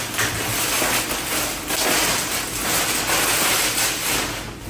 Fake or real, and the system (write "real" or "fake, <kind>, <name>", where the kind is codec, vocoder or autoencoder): real